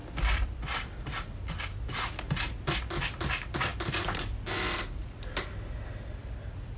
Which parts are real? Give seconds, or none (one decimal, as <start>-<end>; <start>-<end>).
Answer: 0.0-6.8

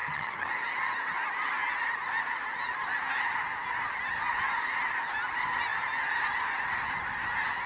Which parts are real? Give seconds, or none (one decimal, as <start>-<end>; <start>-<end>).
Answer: 0.5-7.7